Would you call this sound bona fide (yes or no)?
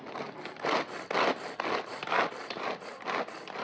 yes